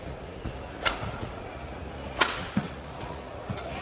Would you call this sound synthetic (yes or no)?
yes